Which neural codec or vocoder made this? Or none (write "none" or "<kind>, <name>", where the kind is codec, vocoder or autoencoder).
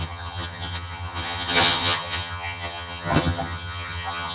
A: vocoder, HiFi-GAN